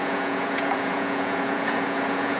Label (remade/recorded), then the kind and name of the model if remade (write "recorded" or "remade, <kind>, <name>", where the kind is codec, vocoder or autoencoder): remade, vocoder, Vocos